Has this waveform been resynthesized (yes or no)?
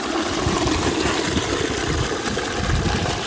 no